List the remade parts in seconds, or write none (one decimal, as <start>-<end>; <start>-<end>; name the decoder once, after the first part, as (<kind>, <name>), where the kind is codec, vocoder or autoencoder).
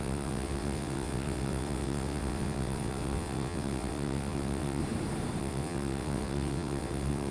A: 0.0-4.8 (vocoder, WaveNeXt); 5.4-7.3